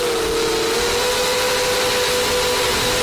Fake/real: real